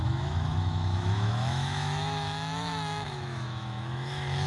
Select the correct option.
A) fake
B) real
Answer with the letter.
A